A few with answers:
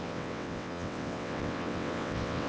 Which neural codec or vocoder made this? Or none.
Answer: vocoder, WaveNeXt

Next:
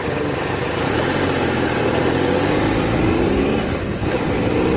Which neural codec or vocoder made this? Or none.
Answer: none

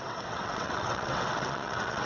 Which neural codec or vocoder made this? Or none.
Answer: vocoder, WaveNeXt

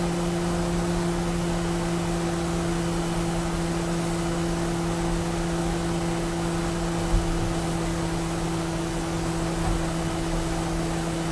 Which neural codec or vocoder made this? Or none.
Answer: none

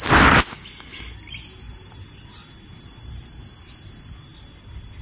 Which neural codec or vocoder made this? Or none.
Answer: none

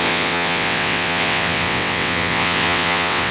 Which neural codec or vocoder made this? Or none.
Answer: vocoder, WaveNeXt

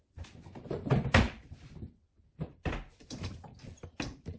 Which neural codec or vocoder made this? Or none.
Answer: none